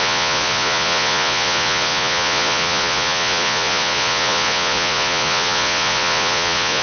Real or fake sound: fake